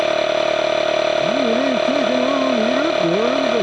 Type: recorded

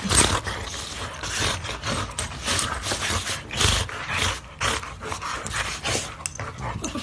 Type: recorded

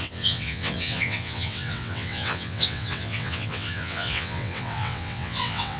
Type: remade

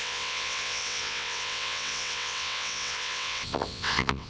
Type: remade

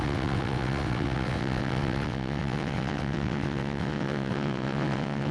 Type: remade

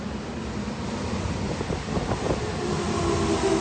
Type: recorded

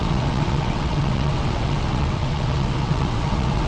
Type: remade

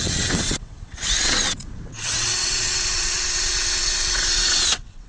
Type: remade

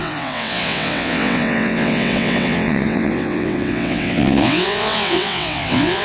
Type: remade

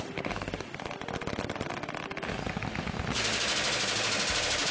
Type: recorded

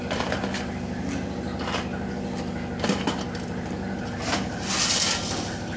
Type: recorded